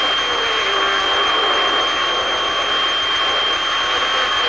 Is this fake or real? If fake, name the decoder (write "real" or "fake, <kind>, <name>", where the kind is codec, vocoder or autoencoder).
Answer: real